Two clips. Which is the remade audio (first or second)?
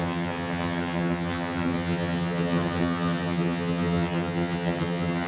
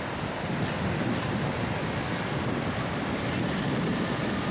first